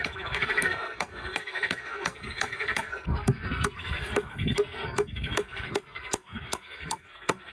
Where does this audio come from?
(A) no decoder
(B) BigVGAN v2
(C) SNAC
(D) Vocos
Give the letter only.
C